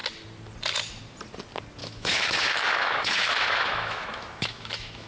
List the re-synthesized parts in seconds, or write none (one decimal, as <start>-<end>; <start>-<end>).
1.8-5.1

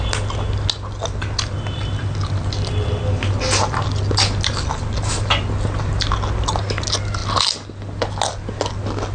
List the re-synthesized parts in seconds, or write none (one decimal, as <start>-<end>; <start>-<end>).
none

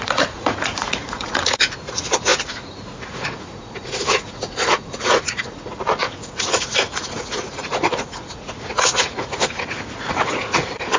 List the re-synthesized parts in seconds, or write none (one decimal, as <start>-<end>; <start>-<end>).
0.0-11.0

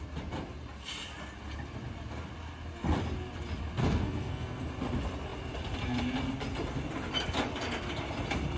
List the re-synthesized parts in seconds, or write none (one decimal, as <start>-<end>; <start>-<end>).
3.8-4.6

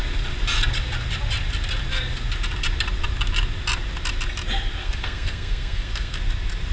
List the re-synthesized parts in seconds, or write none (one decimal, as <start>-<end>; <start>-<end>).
4.8-6.2

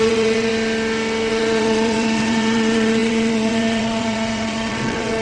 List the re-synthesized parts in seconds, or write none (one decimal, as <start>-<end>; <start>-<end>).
0.0-0.5; 1.3-5.2

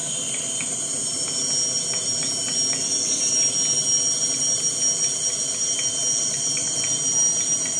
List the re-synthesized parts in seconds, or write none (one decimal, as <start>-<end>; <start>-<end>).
none

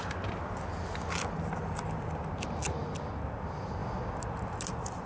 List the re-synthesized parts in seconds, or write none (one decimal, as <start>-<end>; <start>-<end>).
none